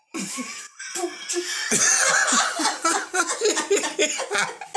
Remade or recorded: recorded